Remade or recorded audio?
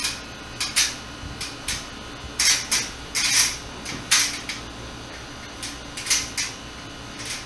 recorded